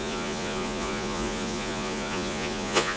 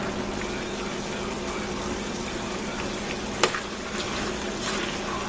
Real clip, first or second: second